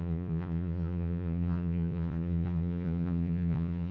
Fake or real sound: fake